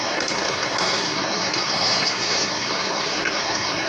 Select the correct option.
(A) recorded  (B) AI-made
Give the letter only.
B